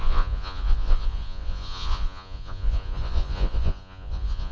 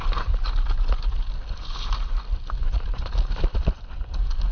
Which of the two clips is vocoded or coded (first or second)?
first